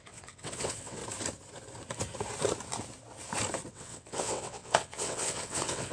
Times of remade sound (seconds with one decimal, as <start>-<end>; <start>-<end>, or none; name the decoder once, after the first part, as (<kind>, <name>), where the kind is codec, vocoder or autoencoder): 0.0-1.0 (vocoder, WaveNeXt); 3.7-5.9